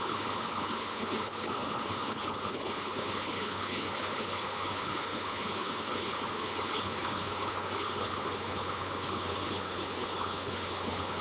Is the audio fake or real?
fake